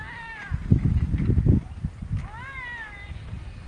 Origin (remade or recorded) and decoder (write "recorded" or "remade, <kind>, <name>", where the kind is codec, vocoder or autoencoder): recorded